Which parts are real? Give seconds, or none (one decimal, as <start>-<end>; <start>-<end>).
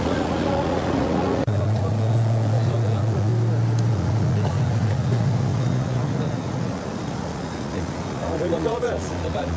3.3-3.9